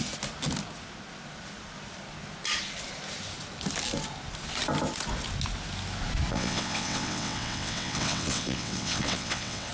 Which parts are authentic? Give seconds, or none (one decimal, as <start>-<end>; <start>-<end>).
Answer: 0.0-6.3

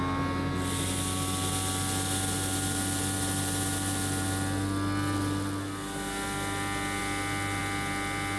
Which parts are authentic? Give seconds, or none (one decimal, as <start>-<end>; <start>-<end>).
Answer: 0.0-8.4

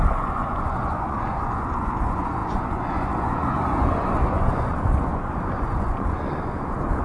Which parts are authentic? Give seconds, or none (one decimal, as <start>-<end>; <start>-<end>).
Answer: none

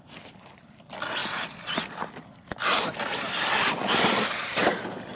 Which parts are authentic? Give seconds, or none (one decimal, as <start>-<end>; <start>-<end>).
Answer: 1.2-2.7; 4.6-5.2

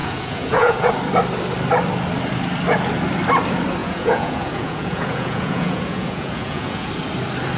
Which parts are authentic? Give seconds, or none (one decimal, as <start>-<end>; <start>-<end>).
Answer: 0.9-3.8; 6.9-7.6

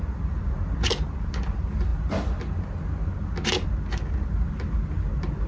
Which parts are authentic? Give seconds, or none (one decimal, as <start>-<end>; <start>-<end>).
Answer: 0.0-5.5